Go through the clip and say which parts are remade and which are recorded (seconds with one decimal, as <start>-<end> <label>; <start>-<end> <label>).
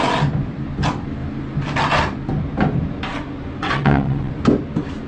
0.0-3.6 recorded; 3.6-4.3 remade; 4.3-5.1 recorded